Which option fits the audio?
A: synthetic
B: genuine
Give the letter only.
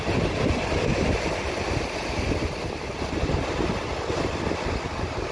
B